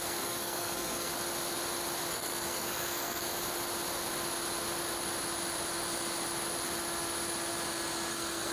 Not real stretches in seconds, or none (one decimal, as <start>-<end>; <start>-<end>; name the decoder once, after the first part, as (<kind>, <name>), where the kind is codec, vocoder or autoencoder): 0.0-1.1 (codec, SNAC); 2.1-3.3; 8.1-8.5